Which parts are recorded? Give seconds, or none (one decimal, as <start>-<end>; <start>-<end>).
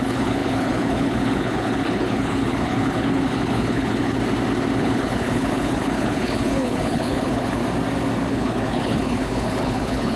4.2-4.8; 7.6-8.3